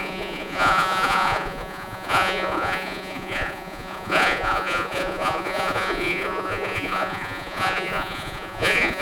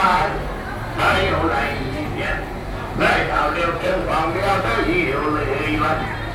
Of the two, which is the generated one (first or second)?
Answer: first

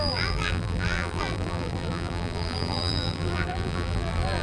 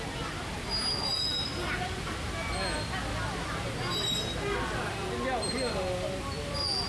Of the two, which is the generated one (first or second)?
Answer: first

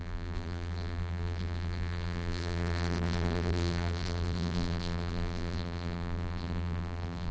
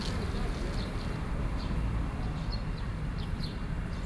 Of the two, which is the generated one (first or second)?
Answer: first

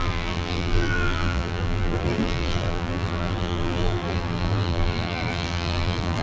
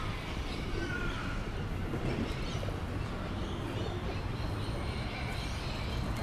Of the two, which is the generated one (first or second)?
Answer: first